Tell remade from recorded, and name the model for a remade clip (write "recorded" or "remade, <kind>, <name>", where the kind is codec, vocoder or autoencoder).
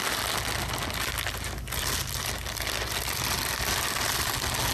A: recorded